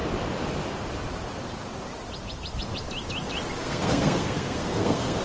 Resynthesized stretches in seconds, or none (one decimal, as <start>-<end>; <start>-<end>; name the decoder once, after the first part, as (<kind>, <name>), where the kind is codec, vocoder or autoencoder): 3.6-5.2 (codec, SNAC)

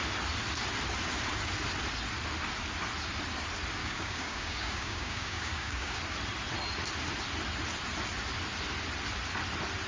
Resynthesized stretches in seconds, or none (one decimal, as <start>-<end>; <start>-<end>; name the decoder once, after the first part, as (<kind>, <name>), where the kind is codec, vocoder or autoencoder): 3.8-6.0 (codec, DAC)

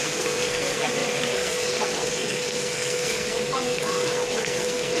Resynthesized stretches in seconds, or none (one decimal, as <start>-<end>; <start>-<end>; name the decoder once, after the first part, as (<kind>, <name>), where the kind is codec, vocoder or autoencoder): 0.0-5.0 (codec, SNAC)